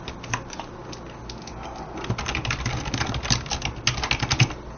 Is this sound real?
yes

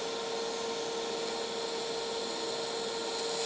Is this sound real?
yes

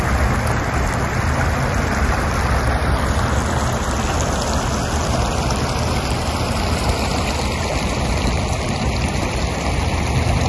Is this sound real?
yes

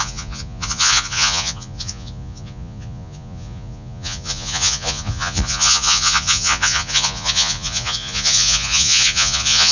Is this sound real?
no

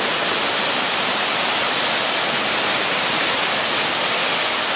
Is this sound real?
yes